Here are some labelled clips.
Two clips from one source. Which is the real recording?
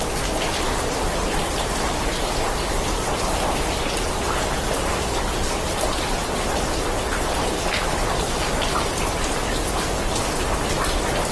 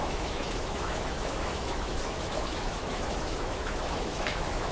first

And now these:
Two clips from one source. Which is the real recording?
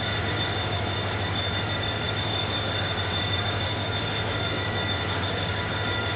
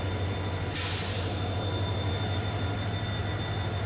second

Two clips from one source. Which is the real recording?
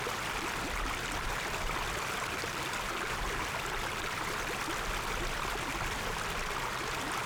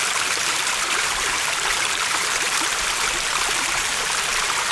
first